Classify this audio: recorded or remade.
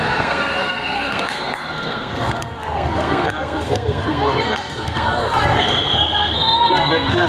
remade